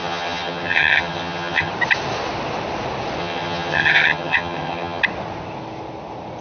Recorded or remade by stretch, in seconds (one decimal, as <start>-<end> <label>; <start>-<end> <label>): 0.0-1.7 remade; 1.7-3.2 recorded; 3.2-5.0 remade; 5.0-6.4 recorded